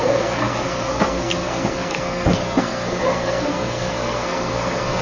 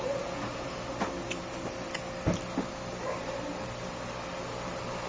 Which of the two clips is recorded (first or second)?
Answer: second